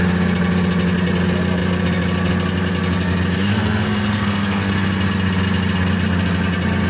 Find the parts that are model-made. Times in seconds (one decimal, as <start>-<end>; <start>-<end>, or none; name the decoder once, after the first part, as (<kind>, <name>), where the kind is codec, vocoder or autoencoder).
3.5-4.7 (codec, SNAC)